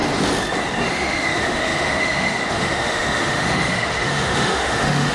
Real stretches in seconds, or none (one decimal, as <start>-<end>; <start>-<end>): 0.0-0.9